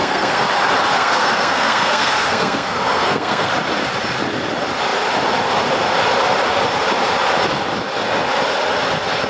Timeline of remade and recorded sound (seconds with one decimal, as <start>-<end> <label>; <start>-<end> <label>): 0.0-0.5 remade; 0.5-0.9 recorded; 0.9-3.5 remade; 3.5-9.3 recorded